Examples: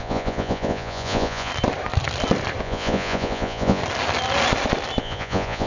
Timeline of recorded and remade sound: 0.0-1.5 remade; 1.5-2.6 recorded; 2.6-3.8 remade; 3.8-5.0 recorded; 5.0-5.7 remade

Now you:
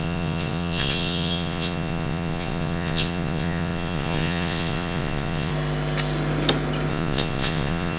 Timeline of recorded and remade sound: 0.0-5.5 remade; 5.5-6.9 recorded; 6.9-8.0 remade

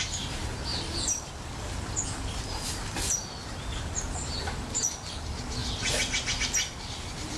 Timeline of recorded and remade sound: 0.0-0.7 recorded; 0.7-4.8 remade; 4.8-7.4 recorded

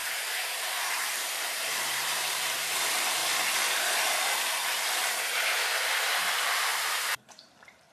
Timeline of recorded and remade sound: 0.0-3.2 remade; 3.2-6.3 recorded; 6.3-7.9 remade

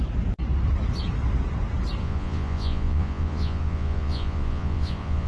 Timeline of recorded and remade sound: 0.0-2.0 recorded; 2.0-5.3 remade

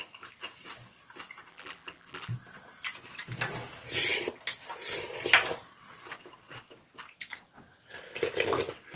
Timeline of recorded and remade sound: 0.0-1.5 recorded; 1.5-2.3 remade; 2.3-9.0 recorded

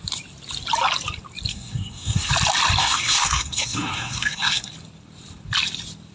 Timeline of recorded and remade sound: 0.0-1.5 recorded; 1.5-2.3 remade; 2.3-2.8 recorded; 2.8-4.7 remade; 4.7-6.1 recorded